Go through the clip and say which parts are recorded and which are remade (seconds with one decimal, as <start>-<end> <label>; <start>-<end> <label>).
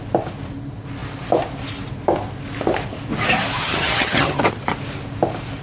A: 0.0-3.6 recorded; 3.6-4.4 remade; 4.4-5.6 recorded